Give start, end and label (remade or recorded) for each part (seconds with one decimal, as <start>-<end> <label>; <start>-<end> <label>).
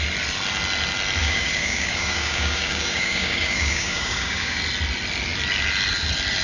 0.0-1.2 recorded; 1.2-4.6 remade; 4.6-6.4 recorded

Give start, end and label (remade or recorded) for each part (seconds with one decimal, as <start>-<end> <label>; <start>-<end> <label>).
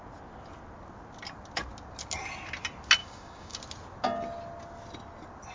0.0-3.0 recorded; 3.0-3.6 remade; 3.6-5.5 recorded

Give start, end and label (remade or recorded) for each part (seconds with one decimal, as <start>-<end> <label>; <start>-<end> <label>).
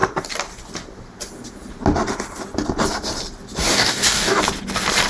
0.0-3.7 recorded; 3.7-4.4 remade; 4.4-5.1 recorded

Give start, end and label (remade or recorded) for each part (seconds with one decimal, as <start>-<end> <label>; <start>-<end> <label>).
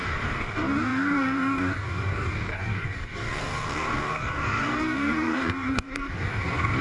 0.0-6.8 remade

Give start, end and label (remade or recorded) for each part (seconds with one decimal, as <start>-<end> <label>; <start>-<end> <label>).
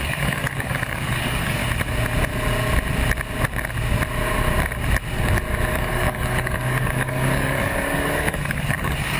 0.0-1.6 remade; 1.6-5.7 recorded; 5.7-9.2 remade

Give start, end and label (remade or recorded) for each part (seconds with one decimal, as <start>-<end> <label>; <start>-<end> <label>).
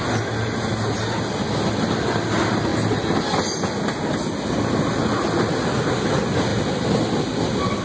0.0-7.8 recorded